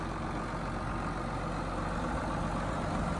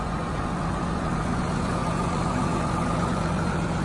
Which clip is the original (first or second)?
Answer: first